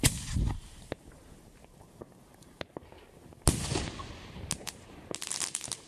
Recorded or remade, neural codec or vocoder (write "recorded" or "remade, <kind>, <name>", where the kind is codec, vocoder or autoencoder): recorded